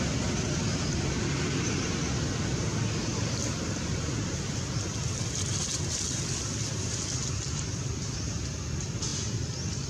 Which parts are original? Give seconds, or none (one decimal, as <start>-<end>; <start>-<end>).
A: 0.0-9.9